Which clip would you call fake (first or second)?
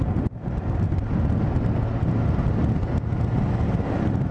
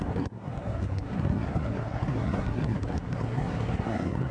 second